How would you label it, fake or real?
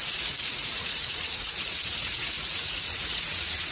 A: fake